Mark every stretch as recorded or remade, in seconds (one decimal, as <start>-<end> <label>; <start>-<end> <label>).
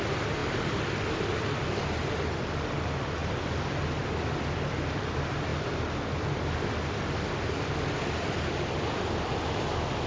0.0-10.1 recorded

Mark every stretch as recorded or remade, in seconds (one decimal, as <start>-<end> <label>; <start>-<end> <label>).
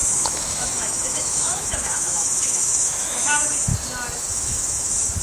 0.0-3.7 remade; 3.7-4.3 recorded; 4.3-5.2 remade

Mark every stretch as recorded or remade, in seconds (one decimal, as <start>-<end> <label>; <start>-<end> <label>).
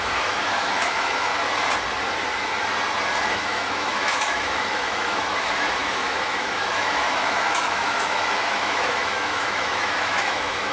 0.0-1.3 remade; 1.3-3.3 recorded; 3.3-10.7 remade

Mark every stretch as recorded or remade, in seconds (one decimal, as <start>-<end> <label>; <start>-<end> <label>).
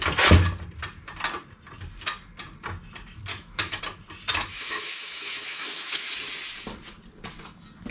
0.0-3.3 recorded; 3.3-3.8 remade; 3.8-4.5 recorded; 4.5-6.1 remade; 6.1-7.9 recorded